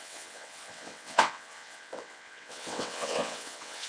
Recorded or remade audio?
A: remade